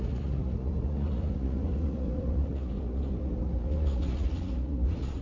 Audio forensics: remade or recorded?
remade